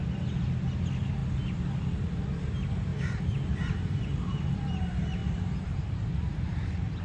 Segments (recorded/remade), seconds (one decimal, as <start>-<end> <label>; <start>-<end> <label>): 0.0-2.9 recorded; 2.9-4.1 remade; 4.1-5.2 recorded; 5.2-7.0 remade